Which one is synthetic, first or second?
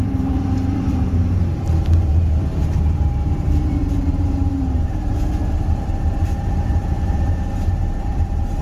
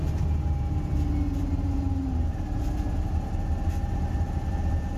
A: first